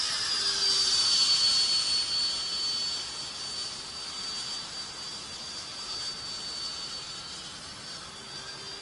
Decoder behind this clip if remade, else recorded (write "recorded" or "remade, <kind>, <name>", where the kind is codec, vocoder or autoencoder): recorded